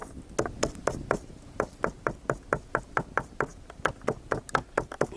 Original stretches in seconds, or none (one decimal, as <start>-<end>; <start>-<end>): 0.0-5.2

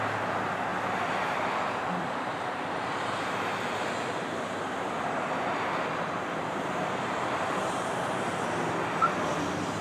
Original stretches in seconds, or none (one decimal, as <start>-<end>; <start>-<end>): 0.0-9.8

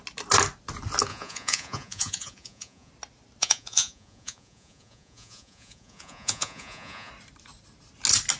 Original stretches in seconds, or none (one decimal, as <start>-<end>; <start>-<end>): 0.0-1.1; 2.9-3.4; 7.1-8.4

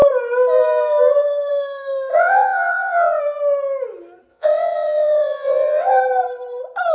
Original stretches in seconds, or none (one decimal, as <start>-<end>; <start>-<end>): 0.0-2.1; 3.2-4.3; 6.0-6.9

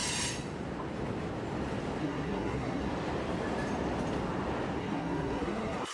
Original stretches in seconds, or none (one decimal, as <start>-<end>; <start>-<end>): 0.0-2.0; 2.9-4.8

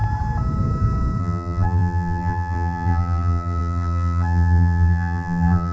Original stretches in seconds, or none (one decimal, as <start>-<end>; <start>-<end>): 0.0-1.2

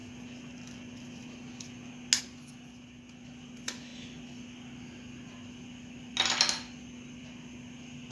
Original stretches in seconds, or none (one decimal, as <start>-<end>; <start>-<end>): 0.0-8.1

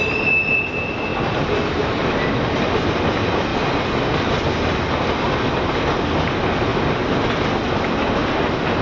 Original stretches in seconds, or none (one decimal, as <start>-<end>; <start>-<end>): 0.0-8.8